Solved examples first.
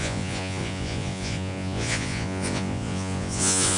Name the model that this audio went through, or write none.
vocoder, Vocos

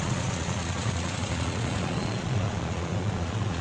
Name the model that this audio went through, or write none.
vocoder, Vocos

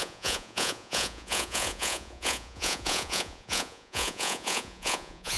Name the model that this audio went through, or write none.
vocoder, Vocos